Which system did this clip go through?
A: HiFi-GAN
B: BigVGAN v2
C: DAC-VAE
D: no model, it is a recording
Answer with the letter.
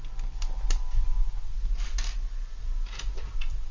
D